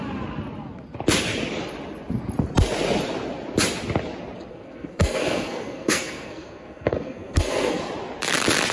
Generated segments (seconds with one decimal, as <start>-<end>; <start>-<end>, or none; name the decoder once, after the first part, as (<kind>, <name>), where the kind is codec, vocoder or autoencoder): 4.5-7.8 (codec, SNAC)